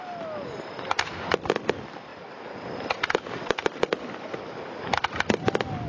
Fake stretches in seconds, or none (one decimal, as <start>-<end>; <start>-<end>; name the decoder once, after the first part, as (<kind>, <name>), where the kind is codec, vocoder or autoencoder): none